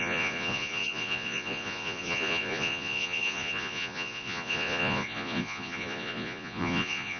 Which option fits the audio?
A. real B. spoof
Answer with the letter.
B